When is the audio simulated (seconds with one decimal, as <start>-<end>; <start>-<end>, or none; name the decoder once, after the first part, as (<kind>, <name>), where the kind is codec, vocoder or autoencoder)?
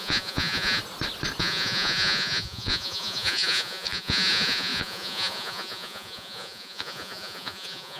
0.0-0.8 (vocoder, Vocos); 1.4-8.0